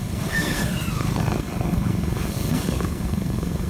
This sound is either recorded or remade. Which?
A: remade